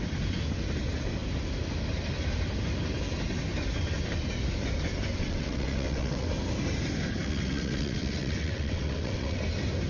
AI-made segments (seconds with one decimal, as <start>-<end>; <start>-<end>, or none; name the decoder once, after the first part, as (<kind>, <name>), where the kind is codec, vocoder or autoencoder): 5.1-6.3 (vocoder, WaveNeXt); 7.2-9.4